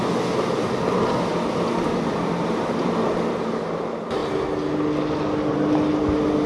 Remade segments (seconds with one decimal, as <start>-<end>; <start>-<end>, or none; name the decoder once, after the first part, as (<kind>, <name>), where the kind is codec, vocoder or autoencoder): none